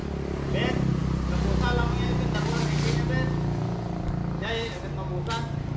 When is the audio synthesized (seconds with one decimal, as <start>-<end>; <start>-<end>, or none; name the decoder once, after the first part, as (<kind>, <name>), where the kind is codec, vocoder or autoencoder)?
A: none